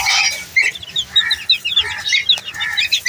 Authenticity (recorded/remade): recorded